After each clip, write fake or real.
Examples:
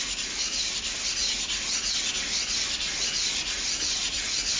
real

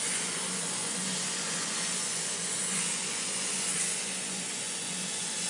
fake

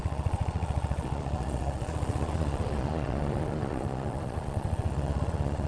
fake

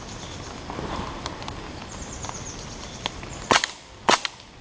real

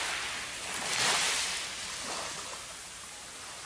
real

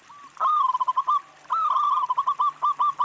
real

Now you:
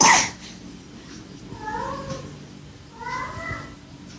real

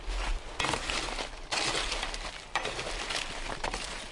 real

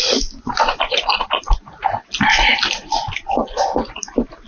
real